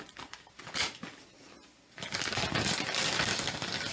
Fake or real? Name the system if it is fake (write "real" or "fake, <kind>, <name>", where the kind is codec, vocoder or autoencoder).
real